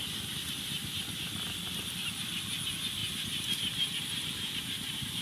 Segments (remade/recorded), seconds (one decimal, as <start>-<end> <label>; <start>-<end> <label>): 0.0-1.2 remade; 1.2-3.0 recorded; 3.0-5.2 remade